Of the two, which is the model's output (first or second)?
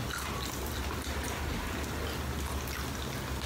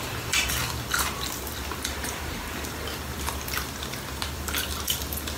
second